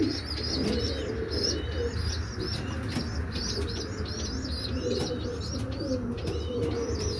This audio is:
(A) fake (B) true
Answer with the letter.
B